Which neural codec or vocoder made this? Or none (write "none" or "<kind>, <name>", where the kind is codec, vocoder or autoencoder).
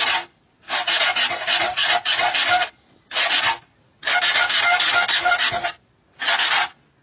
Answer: none